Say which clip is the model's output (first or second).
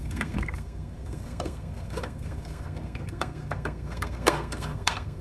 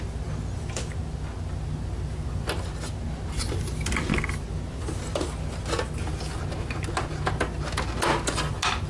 first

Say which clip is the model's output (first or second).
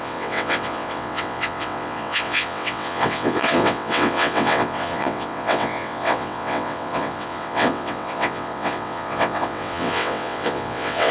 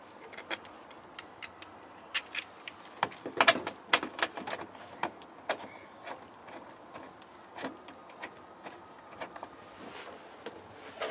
first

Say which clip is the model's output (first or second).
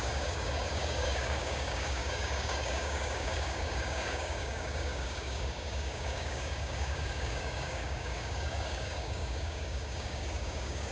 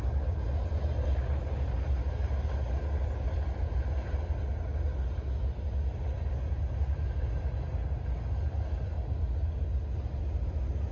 first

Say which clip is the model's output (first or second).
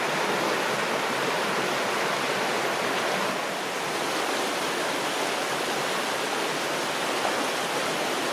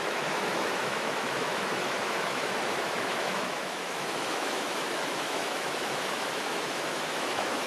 second